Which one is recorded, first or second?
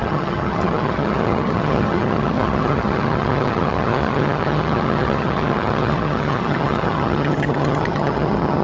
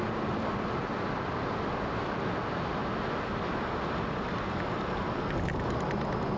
second